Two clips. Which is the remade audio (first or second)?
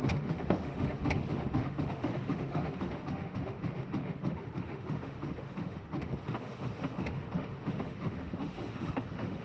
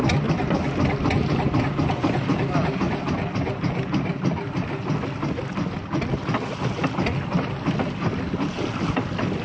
first